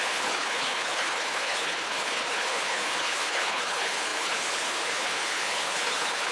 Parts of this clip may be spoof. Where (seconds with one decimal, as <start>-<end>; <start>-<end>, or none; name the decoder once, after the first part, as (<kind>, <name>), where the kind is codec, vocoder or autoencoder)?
0.0-6.3 (codec, HILCodec)